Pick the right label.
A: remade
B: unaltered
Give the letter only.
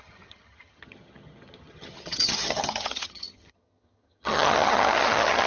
A